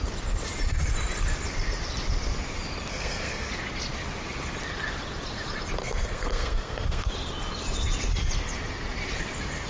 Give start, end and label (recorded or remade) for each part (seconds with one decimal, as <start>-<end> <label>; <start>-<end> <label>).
0.0-2.9 recorded; 2.9-3.5 remade; 3.5-5.8 recorded; 5.8-7.1 remade; 7.1-9.7 recorded